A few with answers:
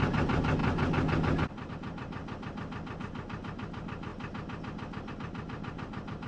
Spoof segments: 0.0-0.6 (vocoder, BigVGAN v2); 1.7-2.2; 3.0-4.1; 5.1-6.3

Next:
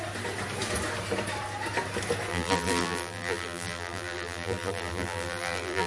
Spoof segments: 2.3-5.9 (vocoder, BigVGAN v2)

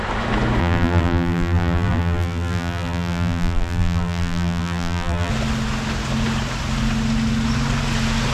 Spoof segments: 0.6-5.3 (vocoder, BigVGAN v2)

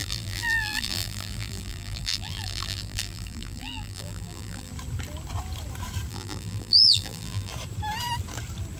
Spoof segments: 0.0-4.7 (vocoder, BigVGAN v2); 6.1-7.5

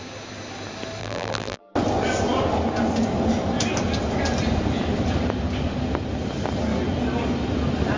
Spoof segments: 1.0-1.6 (vocoder, BigVGAN v2)